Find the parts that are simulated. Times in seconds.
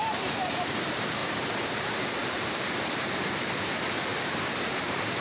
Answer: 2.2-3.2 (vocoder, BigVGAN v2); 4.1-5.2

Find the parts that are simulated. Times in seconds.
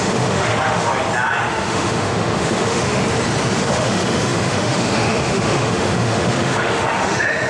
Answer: 0.0-0.9 (autoencoder, DAC-VAE); 1.5-3.0; 3.7-7.5